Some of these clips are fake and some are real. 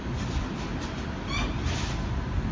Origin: real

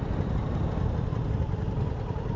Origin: real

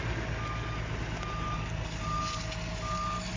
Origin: real